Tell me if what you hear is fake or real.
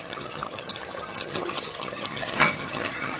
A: fake